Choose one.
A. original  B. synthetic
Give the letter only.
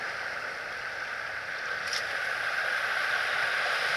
A